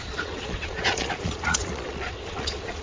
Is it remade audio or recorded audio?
remade